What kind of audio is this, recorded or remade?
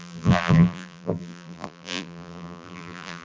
remade